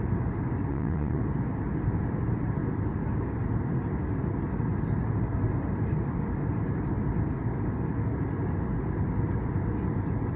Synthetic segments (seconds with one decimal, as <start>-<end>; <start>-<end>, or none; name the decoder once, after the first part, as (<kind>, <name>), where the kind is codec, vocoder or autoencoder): 0.7-1.2 (vocoder, Vocos)